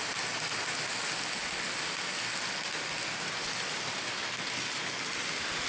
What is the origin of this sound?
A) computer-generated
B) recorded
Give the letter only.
B